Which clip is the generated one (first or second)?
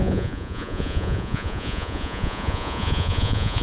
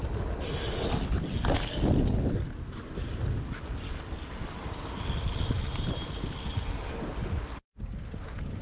first